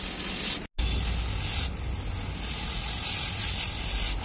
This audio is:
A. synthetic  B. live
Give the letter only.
B